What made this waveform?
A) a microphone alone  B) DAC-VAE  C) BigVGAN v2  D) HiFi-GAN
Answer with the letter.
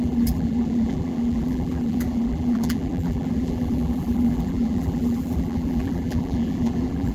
C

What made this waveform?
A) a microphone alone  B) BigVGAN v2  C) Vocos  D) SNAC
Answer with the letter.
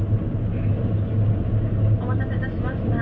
A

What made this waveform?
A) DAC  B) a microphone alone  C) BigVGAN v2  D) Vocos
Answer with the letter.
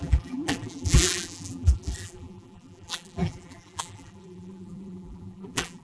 C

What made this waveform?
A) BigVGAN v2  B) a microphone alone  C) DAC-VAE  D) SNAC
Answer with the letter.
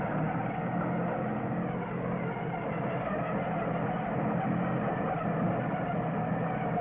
B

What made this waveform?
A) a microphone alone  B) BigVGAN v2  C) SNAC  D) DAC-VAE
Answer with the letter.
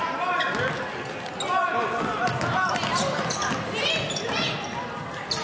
A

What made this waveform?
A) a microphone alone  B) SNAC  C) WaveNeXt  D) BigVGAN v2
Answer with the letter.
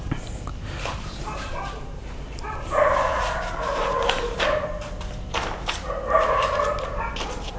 D